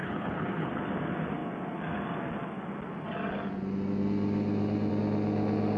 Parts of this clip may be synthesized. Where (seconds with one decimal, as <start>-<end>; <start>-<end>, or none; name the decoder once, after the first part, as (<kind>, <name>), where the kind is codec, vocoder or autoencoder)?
0.0-0.7 (codec, HILCodec)